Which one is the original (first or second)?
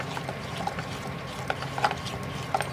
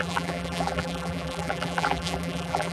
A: first